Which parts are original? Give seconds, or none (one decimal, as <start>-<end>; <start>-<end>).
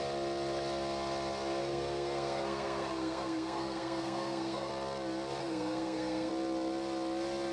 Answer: 0.0-1.6; 4.7-5.4; 6.3-7.5